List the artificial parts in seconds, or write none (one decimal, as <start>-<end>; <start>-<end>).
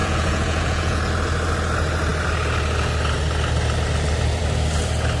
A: 0.0-1.0